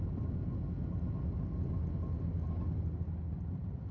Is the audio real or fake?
real